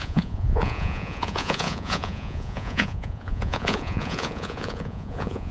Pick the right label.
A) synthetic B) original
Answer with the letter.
A